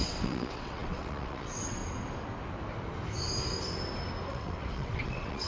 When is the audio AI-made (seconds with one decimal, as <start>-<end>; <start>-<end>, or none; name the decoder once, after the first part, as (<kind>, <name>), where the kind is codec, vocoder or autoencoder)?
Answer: 0.0-1.8 (vocoder, WaveNeXt); 4.3-5.5